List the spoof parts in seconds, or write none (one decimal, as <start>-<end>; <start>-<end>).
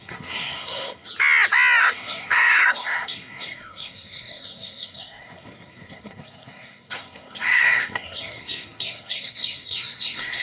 0.0-1.1; 1.8-10.4